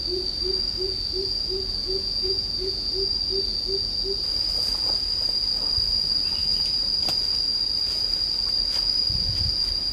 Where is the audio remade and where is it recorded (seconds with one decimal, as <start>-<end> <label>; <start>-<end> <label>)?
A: 0.0-1.8 recorded; 1.8-2.9 remade; 2.9-9.9 recorded